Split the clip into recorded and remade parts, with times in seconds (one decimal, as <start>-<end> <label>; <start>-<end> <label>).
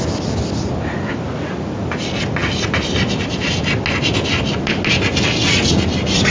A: 0.0-6.3 recorded